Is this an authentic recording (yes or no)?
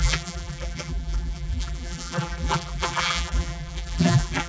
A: no